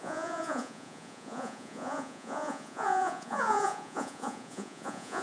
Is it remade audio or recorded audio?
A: remade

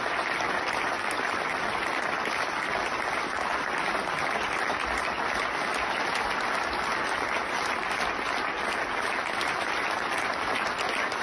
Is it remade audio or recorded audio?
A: recorded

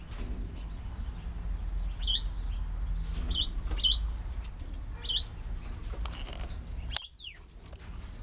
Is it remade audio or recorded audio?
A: recorded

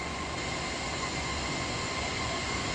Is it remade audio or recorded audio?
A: remade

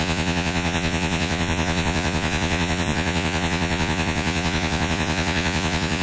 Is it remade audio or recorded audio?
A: remade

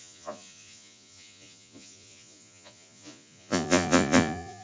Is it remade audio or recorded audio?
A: remade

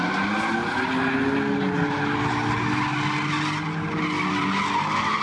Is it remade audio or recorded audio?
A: recorded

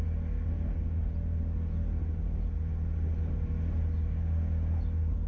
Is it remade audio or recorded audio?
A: recorded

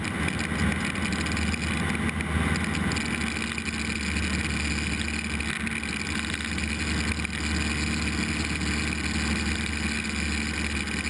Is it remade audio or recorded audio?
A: recorded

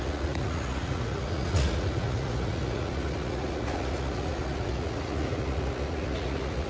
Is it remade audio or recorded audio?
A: remade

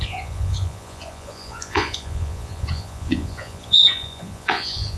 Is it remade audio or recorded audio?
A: remade